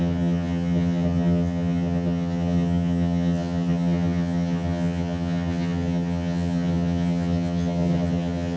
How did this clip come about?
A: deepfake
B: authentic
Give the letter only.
A